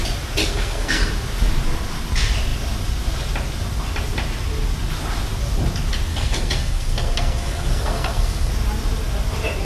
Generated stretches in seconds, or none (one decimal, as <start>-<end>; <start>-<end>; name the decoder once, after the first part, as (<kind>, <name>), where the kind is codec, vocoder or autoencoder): 0.4-1.1 (codec, SNAC); 6.1-8.5